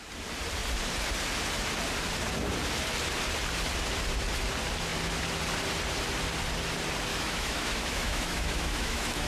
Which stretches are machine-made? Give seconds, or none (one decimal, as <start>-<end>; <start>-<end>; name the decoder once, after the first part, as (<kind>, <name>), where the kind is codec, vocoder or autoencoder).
7.1-9.3 (autoencoder, DAC-VAE)